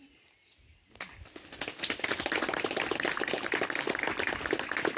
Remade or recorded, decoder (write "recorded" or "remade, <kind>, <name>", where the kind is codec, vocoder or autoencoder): recorded